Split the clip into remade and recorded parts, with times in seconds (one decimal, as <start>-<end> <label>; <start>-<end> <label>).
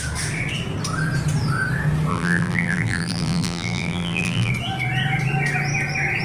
0.0-2.1 recorded; 2.1-4.5 remade; 4.5-6.2 recorded